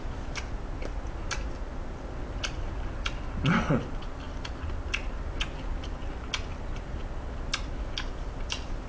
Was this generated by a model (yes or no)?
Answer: no